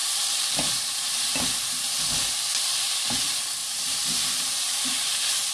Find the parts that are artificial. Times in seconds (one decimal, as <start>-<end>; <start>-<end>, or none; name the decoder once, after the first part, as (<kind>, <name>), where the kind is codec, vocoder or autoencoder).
0.0-2.1 (vocoder, BigVGAN v2); 3.6-5.1